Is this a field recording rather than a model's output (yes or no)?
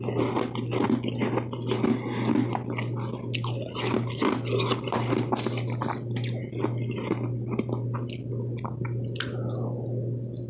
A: yes